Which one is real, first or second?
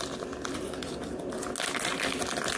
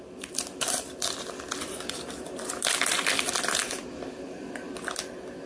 first